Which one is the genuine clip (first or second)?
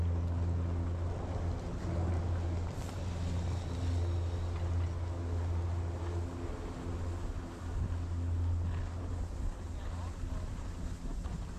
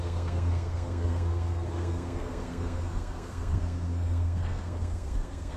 first